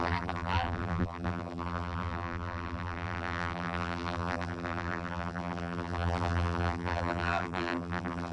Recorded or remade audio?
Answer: remade